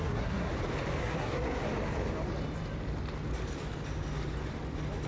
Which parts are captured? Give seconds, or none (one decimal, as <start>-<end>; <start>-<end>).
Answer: 0.5-1.0; 1.7-5.1